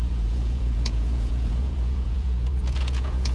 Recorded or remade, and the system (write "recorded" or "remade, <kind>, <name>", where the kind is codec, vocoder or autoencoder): remade, vocoder, Vocos